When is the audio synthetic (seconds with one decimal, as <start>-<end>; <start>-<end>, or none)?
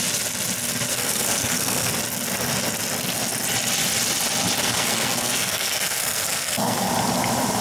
0.9-1.9; 4.6-6.9